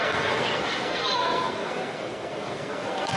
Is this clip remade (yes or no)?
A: yes